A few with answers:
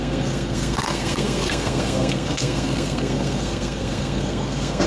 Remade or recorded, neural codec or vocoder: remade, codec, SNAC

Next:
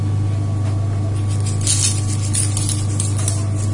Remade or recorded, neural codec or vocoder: recorded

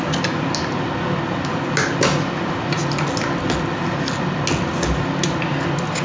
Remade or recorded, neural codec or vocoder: recorded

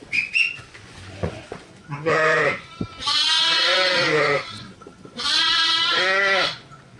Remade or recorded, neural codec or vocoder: remade, vocoder, Vocos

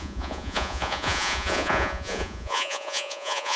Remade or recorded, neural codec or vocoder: remade, vocoder, Vocos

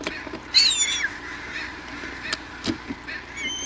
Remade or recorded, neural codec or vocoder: recorded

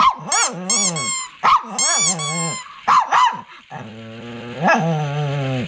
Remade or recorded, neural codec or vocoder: recorded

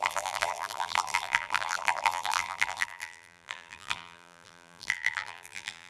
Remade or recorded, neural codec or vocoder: remade, vocoder, BigVGAN v2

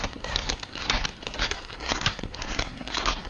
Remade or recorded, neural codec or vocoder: remade, codec, SNAC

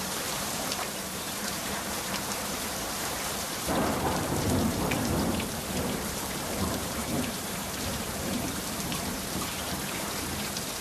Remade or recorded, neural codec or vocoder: remade, vocoder, BigVGAN v2